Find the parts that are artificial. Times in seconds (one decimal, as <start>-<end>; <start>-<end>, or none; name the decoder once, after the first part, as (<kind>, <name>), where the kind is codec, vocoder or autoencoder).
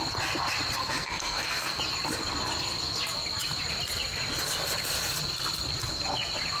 0.8-1.8 (codec, SNAC)